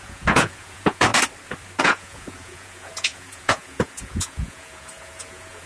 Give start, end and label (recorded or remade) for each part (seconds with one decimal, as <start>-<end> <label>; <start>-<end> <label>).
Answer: 0.0-1.1 remade; 1.1-1.8 recorded; 1.8-5.7 remade